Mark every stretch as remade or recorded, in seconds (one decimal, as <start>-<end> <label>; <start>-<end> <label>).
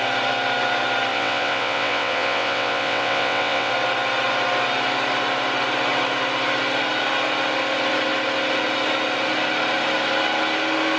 0.0-1.1 recorded; 1.1-3.7 remade; 3.7-11.0 recorded